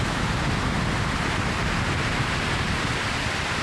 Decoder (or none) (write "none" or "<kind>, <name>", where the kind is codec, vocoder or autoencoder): vocoder, BigVGAN v2